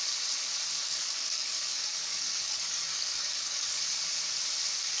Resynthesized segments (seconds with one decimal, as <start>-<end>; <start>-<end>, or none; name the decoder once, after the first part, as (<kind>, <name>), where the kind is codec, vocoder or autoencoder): 0.8-3.8 (codec, DAC)